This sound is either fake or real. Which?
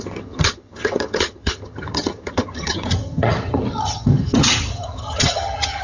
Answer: fake